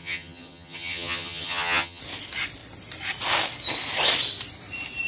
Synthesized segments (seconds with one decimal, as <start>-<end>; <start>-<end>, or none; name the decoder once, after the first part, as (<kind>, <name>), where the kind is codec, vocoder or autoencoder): 0.0-2.0 (vocoder, HiFi-GAN)